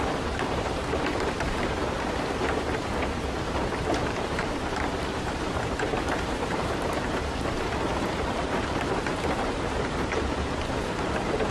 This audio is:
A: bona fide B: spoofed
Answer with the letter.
B